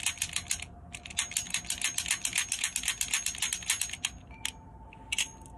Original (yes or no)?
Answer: yes